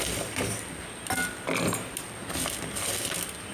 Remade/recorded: recorded